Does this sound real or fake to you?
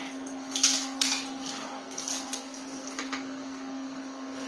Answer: fake